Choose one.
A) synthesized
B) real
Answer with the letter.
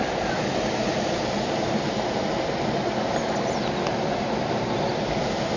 B